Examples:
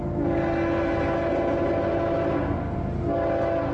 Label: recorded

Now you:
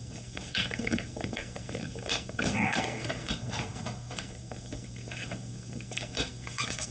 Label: remade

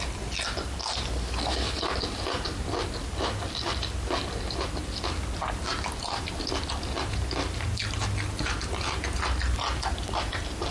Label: recorded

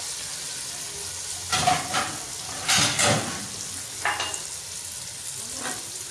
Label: recorded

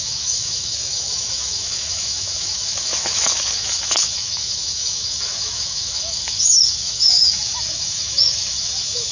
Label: remade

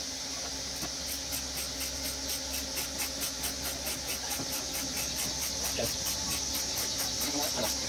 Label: recorded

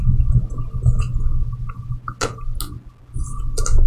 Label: recorded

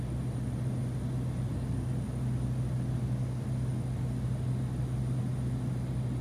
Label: recorded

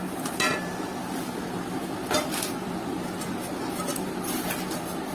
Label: recorded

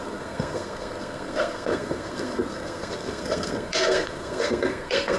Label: remade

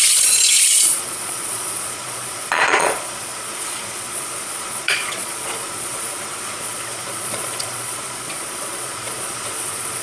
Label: remade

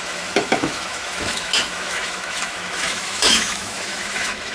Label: remade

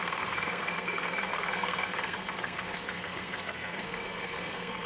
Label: remade